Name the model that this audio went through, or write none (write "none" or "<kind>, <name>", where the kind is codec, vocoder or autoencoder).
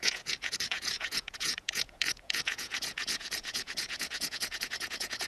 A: vocoder, Vocos